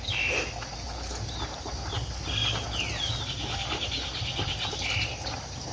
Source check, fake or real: real